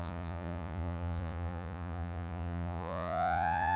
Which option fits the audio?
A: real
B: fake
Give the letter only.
B